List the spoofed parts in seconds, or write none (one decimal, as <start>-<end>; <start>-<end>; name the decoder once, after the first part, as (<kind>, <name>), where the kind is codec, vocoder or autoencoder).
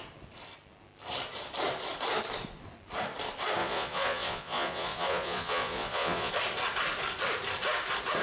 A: 3.6-6.3 (vocoder, Vocos)